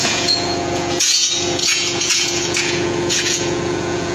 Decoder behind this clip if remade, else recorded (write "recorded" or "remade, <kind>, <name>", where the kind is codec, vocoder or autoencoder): remade, vocoder, Vocos